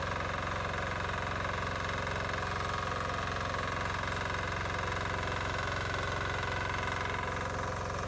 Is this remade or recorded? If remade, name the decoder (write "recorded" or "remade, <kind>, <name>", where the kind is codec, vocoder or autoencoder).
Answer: recorded